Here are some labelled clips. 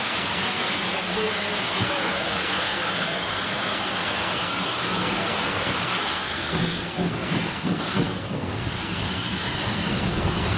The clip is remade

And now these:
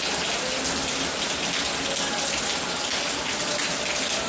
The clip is recorded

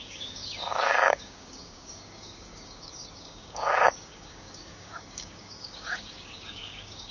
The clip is remade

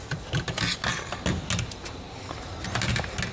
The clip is recorded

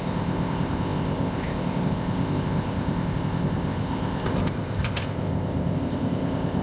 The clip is remade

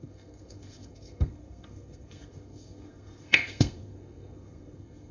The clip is remade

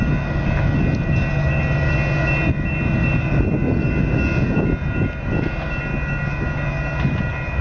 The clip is recorded